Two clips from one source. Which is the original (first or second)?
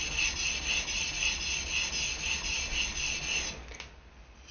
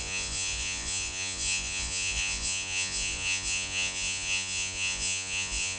first